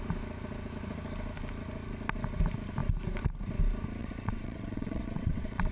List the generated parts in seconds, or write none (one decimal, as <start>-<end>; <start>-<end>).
4.0-5.7